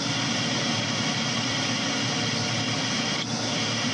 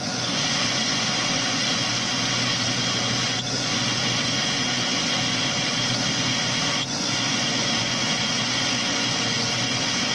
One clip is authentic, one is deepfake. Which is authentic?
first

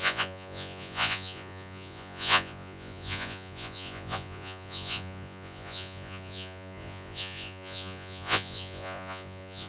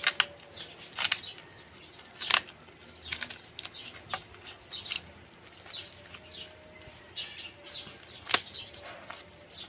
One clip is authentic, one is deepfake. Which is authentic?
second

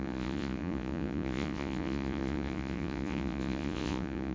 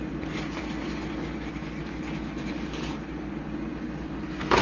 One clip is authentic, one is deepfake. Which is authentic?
second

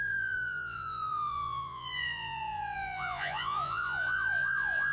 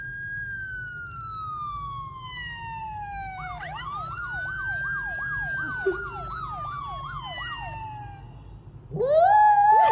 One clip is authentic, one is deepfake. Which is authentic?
second